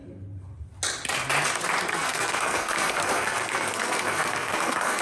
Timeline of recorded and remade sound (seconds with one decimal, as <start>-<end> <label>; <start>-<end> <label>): 0.0-1.9 recorded; 1.9-5.0 remade